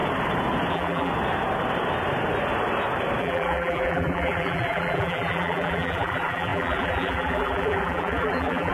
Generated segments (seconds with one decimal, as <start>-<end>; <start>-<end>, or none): 0.7-1.1; 3.2-8.7